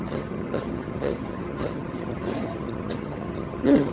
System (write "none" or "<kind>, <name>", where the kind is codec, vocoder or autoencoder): vocoder, HiFi-GAN